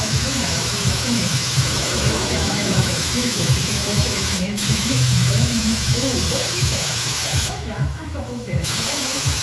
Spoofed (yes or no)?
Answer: yes